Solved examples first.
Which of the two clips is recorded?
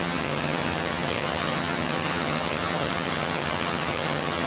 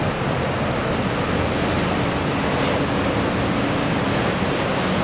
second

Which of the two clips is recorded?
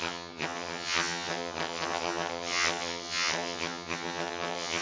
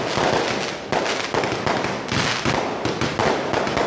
second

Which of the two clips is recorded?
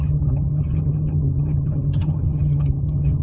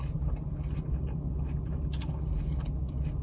second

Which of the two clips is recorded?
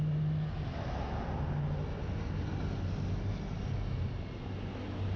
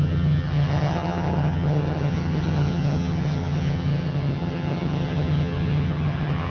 first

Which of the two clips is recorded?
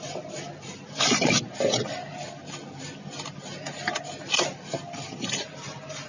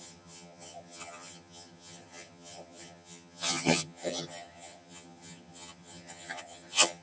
first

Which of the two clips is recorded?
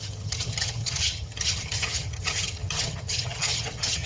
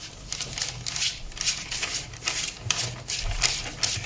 second